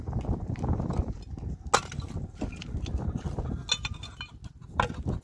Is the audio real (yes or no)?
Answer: yes